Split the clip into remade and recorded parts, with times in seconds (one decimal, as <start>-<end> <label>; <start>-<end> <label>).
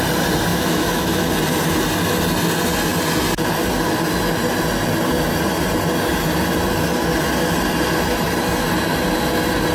0.0-0.5 recorded; 0.5-1.3 remade; 1.3-9.7 recorded